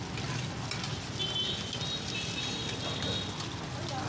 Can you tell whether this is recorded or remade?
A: recorded